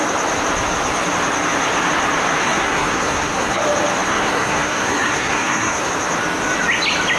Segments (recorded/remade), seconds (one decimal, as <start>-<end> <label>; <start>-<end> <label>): 0.0-2.4 recorded; 2.4-3.6 remade; 3.6-4.1 recorded; 4.1-5.9 remade; 5.9-7.2 recorded